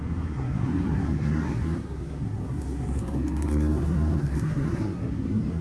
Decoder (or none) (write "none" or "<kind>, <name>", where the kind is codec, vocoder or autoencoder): codec, SNAC